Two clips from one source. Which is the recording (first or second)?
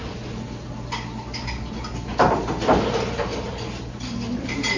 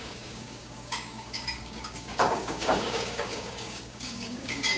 first